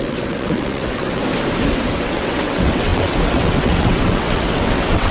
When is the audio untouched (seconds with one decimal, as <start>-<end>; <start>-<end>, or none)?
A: 1.2-1.9